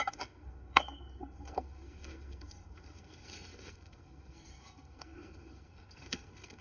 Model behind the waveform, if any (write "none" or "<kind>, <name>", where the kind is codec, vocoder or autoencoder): codec, SNAC